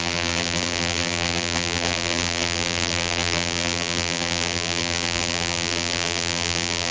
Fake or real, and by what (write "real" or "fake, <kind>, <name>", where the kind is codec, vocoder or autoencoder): fake, vocoder, BigVGAN v2